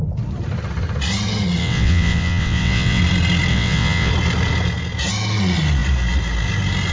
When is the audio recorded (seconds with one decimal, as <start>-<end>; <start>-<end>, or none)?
0.0-1.6; 3.0-3.5; 4.1-6.9